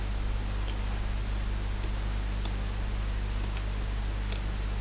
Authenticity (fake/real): real